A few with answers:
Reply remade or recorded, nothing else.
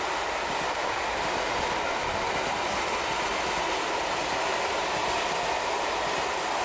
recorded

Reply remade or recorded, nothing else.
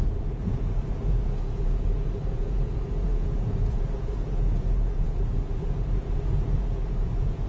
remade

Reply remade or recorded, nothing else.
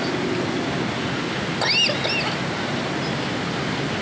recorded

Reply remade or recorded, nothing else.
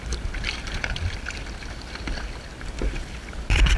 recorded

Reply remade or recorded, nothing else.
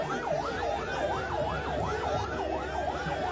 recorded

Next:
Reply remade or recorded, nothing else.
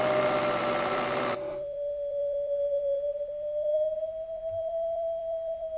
remade